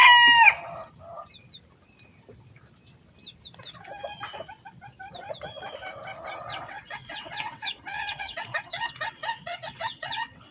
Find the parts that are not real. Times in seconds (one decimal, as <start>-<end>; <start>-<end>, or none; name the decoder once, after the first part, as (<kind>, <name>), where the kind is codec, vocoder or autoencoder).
6.5-10.5 (vocoder, WaveNeXt)